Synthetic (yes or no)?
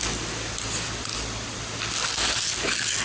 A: no